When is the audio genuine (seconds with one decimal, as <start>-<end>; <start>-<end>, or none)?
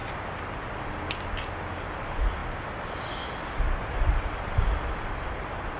0.0-5.8